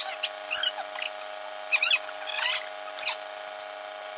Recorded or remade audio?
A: recorded